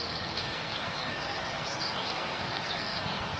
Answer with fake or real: fake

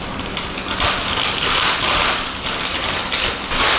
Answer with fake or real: real